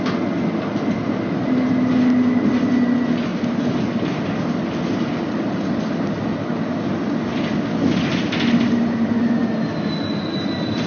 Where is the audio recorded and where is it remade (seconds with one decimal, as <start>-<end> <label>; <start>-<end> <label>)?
0.0-3.3 recorded; 3.3-4.2 remade; 4.2-10.9 recorded